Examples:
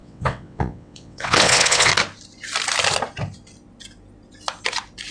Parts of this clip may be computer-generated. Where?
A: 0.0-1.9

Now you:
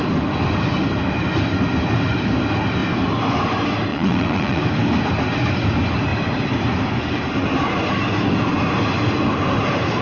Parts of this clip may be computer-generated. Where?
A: 3.9-4.6